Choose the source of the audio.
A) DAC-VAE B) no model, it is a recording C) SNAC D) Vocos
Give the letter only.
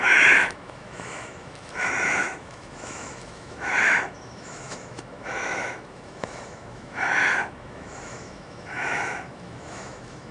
A